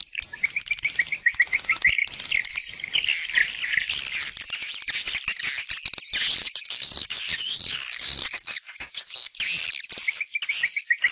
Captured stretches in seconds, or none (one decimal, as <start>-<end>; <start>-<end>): 0.0-6.4; 9.3-11.1